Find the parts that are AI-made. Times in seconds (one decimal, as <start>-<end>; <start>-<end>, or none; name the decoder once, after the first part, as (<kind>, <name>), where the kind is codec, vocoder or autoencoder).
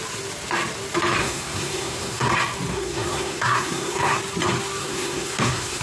1.2-2.3 (codec, SNAC); 2.7-4.2; 4.8-5.8